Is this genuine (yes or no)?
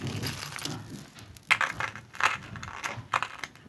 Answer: yes